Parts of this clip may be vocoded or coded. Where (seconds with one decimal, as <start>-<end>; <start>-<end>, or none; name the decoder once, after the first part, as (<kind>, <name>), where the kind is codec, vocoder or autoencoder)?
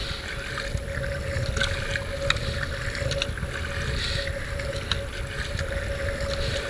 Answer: none